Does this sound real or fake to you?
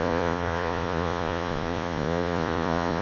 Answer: fake